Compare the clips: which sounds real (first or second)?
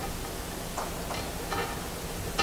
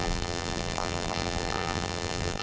first